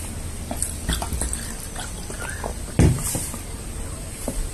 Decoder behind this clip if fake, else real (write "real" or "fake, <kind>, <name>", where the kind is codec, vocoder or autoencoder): real